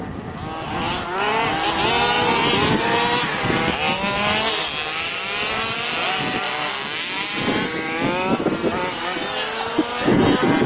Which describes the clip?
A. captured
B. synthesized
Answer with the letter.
A